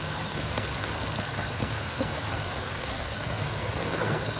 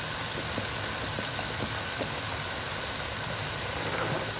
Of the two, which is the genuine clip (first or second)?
second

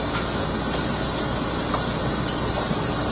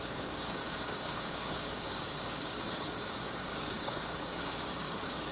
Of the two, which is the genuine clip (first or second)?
first